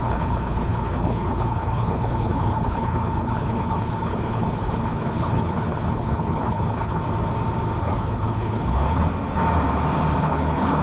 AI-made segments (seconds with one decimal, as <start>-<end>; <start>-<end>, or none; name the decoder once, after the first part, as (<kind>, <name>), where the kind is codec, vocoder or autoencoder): 0.0-7.0 (codec, HILCodec); 7.8-9.0; 10.2-10.8